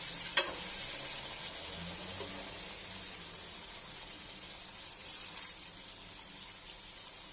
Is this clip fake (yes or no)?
no